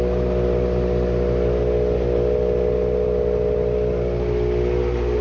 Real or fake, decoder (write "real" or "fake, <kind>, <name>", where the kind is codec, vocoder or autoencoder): real